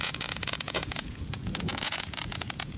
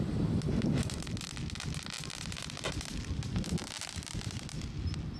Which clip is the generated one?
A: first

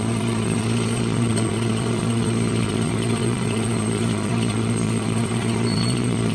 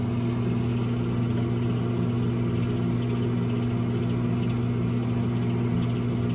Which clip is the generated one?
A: first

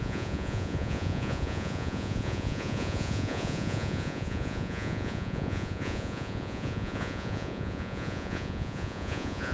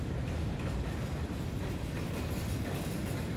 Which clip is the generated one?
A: first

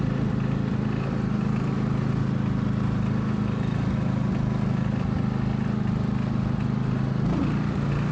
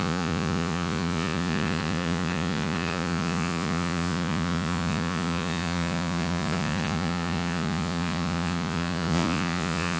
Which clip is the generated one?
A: second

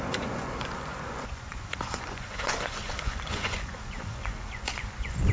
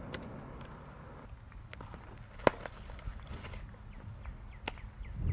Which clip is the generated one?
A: first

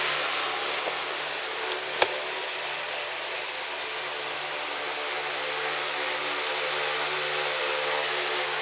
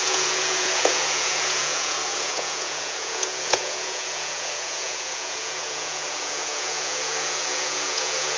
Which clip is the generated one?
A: second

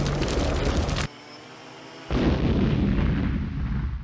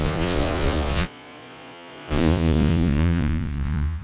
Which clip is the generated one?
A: second